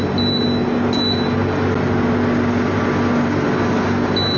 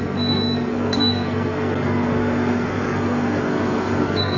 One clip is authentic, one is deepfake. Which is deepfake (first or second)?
second